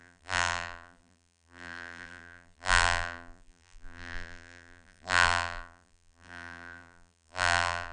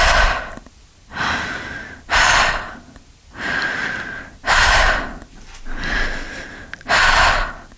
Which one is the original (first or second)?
second